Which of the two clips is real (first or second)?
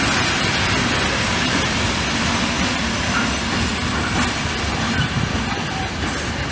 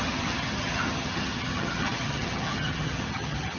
first